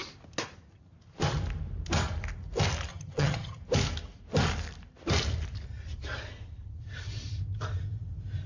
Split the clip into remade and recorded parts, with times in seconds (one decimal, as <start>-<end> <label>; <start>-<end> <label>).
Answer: 0.0-2.9 recorded; 2.9-3.6 remade; 3.6-8.5 recorded